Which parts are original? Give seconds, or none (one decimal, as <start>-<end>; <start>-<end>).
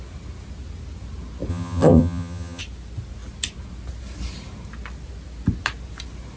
0.0-1.5; 2.6-6.4